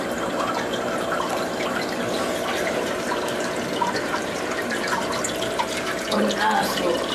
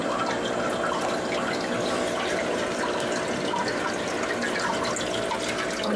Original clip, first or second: second